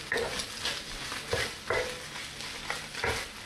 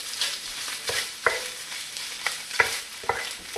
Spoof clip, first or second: second